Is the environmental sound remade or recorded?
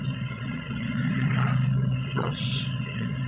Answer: remade